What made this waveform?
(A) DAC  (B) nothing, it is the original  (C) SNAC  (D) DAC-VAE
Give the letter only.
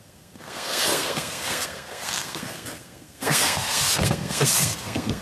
C